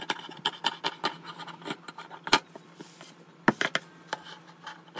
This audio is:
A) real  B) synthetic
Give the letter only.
A